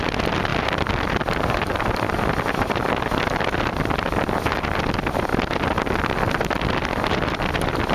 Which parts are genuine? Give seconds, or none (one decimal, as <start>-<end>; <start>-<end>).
0.5-1.1; 5.3-6.4